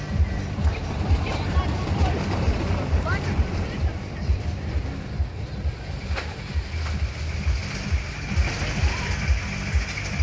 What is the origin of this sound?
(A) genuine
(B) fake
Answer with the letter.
A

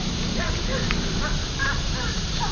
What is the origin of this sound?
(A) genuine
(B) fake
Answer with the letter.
B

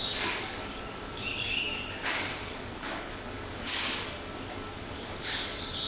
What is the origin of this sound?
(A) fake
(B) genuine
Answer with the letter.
A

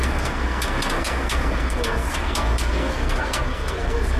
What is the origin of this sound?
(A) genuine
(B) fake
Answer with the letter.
B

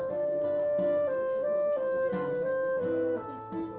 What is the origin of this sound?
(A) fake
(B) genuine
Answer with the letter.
B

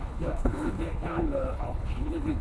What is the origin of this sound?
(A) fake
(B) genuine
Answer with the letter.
A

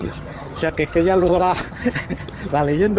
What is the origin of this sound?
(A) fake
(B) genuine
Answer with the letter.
A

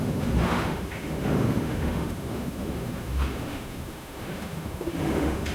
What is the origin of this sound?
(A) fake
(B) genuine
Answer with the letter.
A